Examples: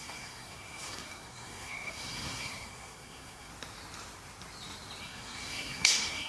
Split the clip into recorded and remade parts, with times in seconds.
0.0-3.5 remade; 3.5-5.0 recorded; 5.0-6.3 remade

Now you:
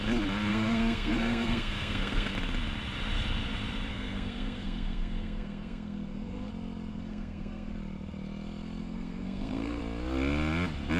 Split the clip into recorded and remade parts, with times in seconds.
0.0-0.5 recorded; 0.5-2.3 remade; 2.3-3.9 recorded; 3.9-6.5 remade; 6.5-6.9 recorded; 6.9-7.7 remade; 7.7-8.8 recorded; 8.8-9.8 remade; 9.8-11.0 recorded

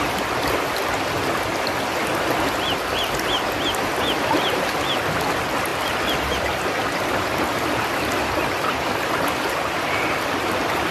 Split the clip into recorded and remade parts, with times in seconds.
0.0-10.9 recorded

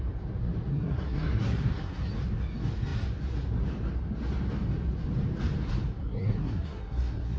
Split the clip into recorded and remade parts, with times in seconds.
0.0-0.7 recorded; 0.7-2.1 remade; 2.1-6.0 recorded; 6.0-7.4 remade

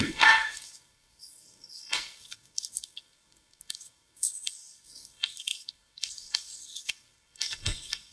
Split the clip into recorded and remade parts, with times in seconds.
0.0-8.1 remade